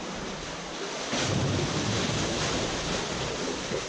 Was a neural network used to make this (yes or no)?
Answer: no